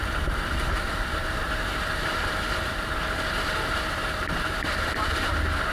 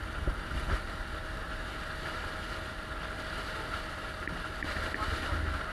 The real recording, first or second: second